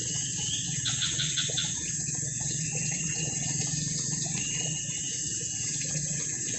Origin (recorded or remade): remade